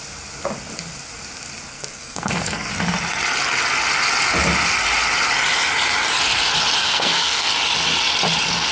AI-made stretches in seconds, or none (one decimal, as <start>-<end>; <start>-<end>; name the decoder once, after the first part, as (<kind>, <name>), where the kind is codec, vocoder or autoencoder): 1.7-2.7 (codec, SNAC); 6.8-7.5